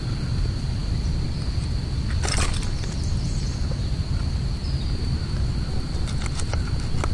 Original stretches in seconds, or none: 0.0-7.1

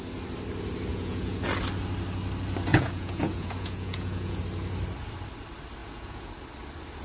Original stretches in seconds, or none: 0.0-0.9; 1.4-2.7; 4.4-5.8; 6.3-7.0

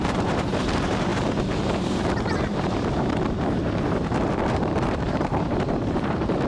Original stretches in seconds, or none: none

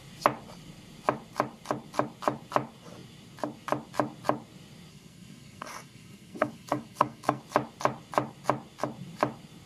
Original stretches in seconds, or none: 0.0-4.9; 7.4-9.7

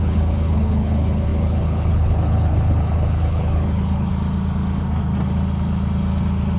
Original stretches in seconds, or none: 4.1-6.6

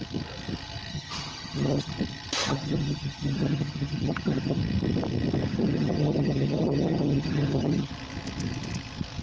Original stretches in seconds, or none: 0.0-0.9; 1.9-2.4; 4.6-5.5; 7.9-9.2